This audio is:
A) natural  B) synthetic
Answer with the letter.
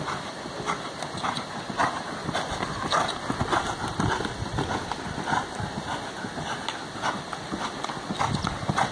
A